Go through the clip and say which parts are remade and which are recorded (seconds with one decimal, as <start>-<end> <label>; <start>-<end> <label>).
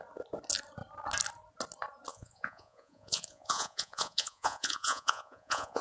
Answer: 0.0-2.1 recorded; 2.1-5.8 remade